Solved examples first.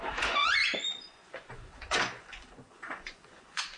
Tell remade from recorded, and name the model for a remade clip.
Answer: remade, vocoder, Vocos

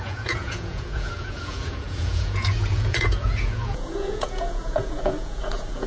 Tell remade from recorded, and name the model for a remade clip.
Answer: remade, vocoder, Vocos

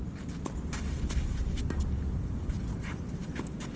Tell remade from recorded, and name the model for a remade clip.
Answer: recorded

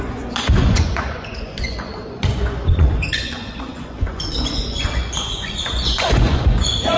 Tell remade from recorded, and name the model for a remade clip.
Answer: remade, vocoder, Vocos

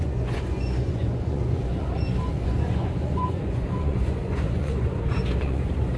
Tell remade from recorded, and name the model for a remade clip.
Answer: remade, vocoder, Vocos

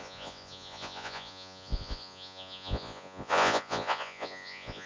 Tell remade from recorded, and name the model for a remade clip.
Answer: remade, vocoder, Vocos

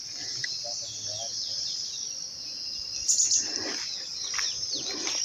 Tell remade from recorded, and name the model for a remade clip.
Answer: recorded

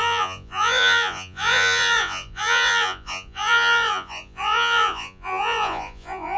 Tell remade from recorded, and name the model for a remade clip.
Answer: remade, vocoder, Vocos